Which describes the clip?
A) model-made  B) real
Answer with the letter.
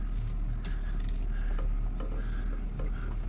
B